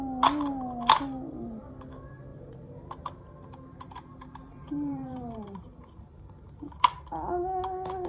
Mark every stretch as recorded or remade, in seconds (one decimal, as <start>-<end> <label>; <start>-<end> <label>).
0.0-2.3 recorded; 2.3-6.2 remade; 6.2-8.1 recorded